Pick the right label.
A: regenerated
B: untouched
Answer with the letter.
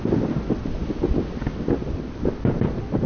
B